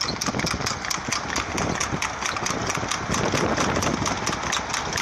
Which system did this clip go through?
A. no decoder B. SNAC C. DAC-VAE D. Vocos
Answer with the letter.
A